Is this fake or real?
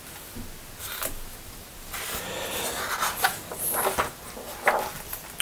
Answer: real